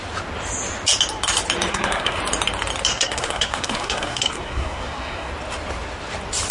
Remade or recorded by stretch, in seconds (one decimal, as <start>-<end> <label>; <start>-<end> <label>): 0.0-1.7 recorded; 1.7-2.2 remade; 2.2-2.9 recorded; 2.9-5.3 remade; 5.3-6.5 recorded